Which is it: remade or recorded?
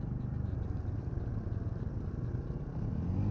recorded